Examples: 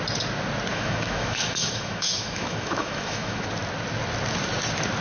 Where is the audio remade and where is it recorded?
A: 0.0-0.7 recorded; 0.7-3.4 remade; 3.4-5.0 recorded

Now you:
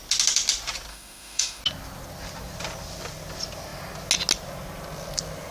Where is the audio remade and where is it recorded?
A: 0.0-0.9 recorded; 0.9-1.6 remade; 1.6-5.5 recorded

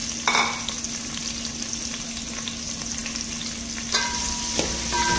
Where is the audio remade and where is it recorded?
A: 0.0-5.2 recorded

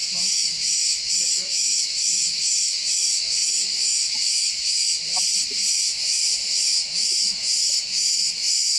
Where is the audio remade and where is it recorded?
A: 0.0-5.1 remade; 5.1-5.7 recorded; 5.7-8.8 remade

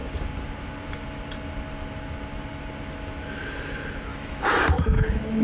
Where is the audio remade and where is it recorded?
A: 0.0-4.1 recorded; 4.1-4.6 remade; 4.6-5.4 recorded

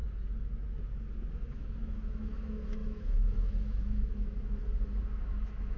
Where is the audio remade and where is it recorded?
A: 0.0-1.3 recorded; 1.3-4.6 remade; 4.6-5.2 recorded; 5.2-5.8 remade